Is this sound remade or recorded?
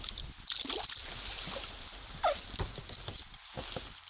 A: recorded